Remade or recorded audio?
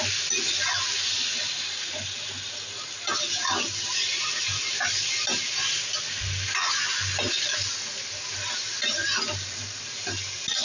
recorded